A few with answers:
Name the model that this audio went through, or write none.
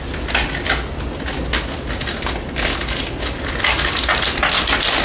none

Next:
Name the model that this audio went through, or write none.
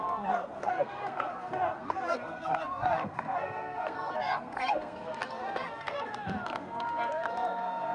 codec, SNAC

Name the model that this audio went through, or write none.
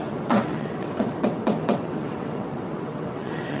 vocoder, WaveNeXt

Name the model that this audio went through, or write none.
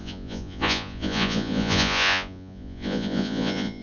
vocoder, Vocos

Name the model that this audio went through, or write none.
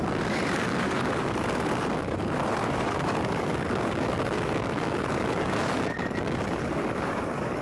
codec, DAC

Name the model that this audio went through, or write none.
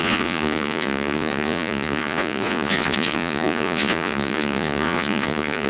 vocoder, Vocos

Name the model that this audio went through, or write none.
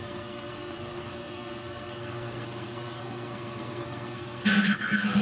codec, SNAC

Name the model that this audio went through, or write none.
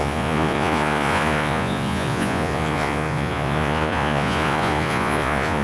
vocoder, Vocos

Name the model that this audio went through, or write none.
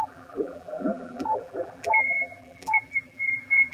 vocoder, BigVGAN v2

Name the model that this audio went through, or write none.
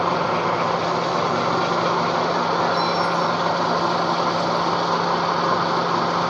none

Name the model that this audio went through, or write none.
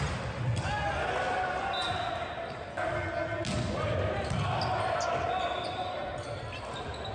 none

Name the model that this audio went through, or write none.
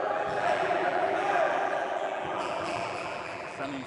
vocoder, BigVGAN v2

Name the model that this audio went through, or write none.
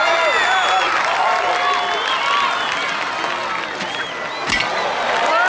none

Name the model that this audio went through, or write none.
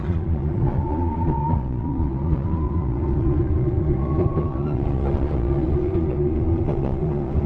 vocoder, Vocos